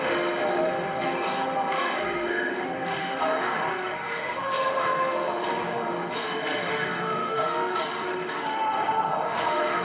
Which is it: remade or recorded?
remade